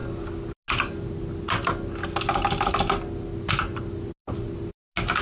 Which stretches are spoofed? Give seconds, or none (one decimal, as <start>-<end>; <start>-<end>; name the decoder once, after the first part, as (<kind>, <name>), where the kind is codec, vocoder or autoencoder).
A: none